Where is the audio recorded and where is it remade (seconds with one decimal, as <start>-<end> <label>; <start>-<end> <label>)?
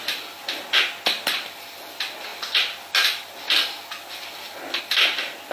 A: 0.0-5.5 recorded